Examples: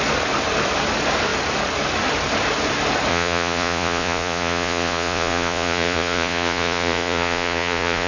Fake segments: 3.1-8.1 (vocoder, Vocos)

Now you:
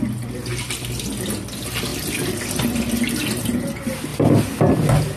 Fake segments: 1.9-3.6 (vocoder, BigVGAN v2); 4.1-4.7